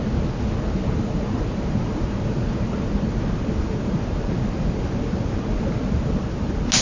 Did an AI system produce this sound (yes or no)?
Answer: no